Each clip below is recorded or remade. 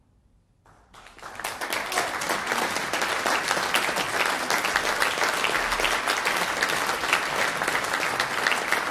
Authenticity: recorded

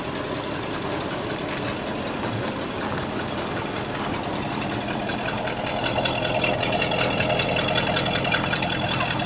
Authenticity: recorded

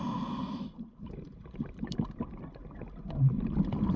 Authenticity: recorded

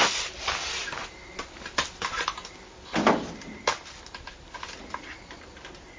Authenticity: recorded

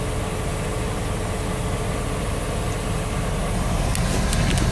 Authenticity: recorded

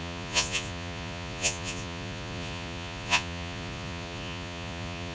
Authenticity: remade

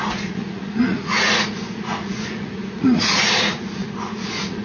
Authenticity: remade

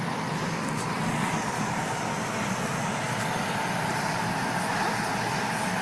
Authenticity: recorded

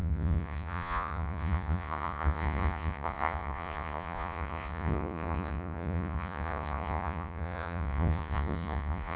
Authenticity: remade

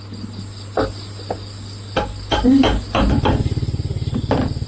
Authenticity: recorded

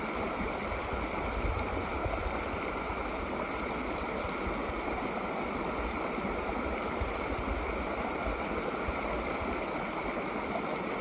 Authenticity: recorded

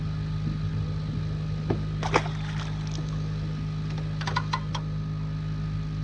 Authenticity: recorded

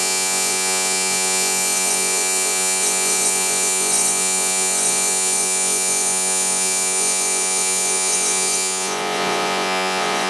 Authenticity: remade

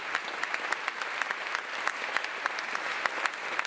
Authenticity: recorded